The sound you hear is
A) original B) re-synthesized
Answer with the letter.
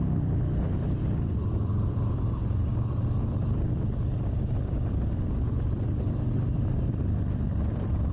B